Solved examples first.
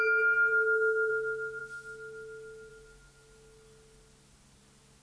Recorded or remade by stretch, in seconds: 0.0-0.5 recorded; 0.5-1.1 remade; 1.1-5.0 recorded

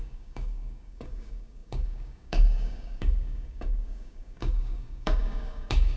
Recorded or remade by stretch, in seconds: 0.0-6.0 remade

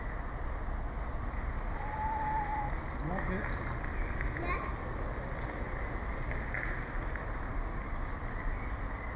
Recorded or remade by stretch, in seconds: 0.0-7.5 recorded; 7.5-8.1 remade; 8.1-9.2 recorded

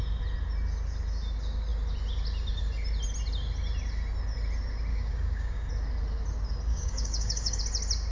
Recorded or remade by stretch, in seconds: 0.0-4.9 recorded; 4.9-5.7 remade; 5.7-6.7 recorded; 6.7-7.6 remade; 7.6-8.1 recorded

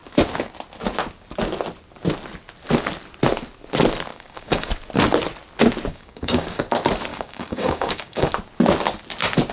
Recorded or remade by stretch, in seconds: 0.0-4.1 recorded; 4.1-4.7 remade; 4.7-5.9 recorded; 5.9-6.6 remade; 6.6-7.1 recorded; 7.1-8.3 remade; 8.3-9.5 recorded